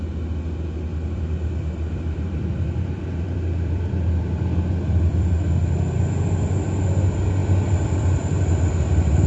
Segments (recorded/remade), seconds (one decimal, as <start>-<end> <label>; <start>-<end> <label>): 0.0-0.9 recorded; 0.9-5.3 remade; 5.3-7.4 recorded; 7.4-8.4 remade; 8.4-9.3 recorded